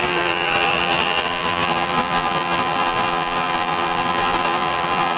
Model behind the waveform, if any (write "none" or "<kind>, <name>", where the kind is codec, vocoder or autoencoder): vocoder, BigVGAN v2